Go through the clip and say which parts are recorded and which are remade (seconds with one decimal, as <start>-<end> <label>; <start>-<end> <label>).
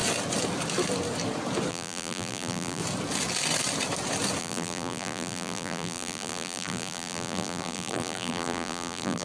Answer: 0.0-1.7 recorded; 1.7-2.8 remade; 2.8-4.4 recorded; 4.4-9.2 remade